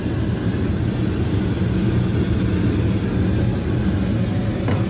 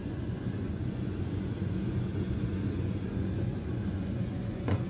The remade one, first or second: second